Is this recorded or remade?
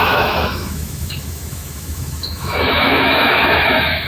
remade